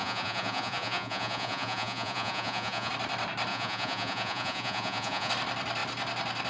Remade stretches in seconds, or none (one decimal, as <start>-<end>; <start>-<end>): 0.0-2.9; 3.5-5.3